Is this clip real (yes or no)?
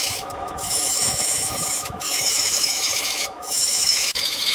no